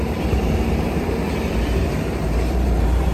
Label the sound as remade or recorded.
remade